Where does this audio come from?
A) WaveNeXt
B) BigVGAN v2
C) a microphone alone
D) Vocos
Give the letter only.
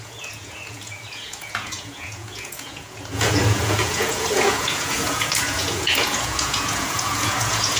D